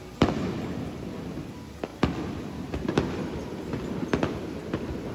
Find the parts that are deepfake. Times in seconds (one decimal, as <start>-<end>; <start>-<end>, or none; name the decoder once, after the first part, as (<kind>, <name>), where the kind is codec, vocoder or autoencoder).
none